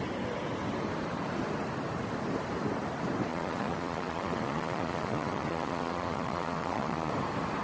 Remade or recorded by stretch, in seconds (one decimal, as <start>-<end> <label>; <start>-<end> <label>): 0.0-3.3 recorded; 3.3-7.1 remade; 7.1-7.6 recorded